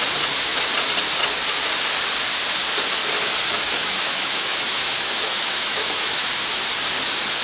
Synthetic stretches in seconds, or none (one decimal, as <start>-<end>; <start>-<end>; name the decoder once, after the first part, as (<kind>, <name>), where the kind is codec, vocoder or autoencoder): 3.5-6.4 (autoencoder, DAC-VAE)